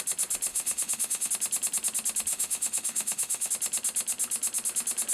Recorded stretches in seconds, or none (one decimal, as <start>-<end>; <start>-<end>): 0.0-0.5; 1.3-2.3; 3.5-5.1